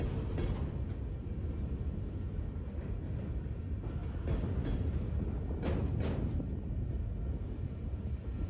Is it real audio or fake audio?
real